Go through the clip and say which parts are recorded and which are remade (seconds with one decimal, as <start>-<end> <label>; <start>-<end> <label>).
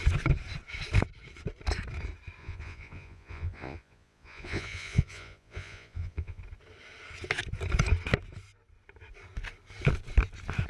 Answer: 0.0-2.4 recorded; 2.4-6.4 remade; 6.4-10.7 recorded